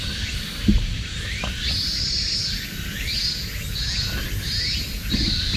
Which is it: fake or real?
real